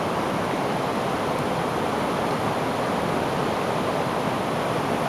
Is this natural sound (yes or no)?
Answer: yes